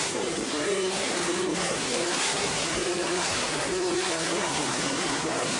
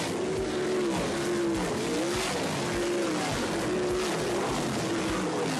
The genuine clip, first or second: second